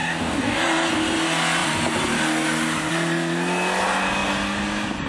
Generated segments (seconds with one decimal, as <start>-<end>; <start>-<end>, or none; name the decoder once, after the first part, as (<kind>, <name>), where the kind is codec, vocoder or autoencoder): 0.0-0.6 (codec, DAC)